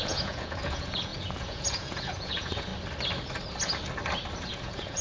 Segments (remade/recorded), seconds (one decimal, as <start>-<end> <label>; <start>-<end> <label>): 0.0-2.7 remade; 2.7-4.5 recorded; 4.5-5.0 remade